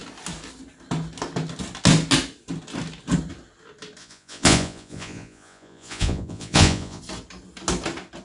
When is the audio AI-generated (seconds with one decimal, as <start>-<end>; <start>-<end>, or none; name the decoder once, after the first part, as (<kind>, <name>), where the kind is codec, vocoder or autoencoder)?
4.0-7.0 (vocoder, Vocos)